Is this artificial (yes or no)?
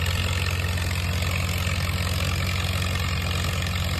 no